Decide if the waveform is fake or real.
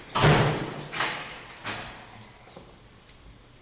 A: real